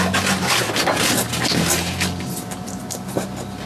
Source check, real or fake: real